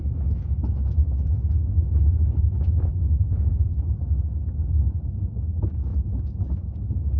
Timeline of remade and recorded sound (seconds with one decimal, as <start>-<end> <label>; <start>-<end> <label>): 0.0-7.2 remade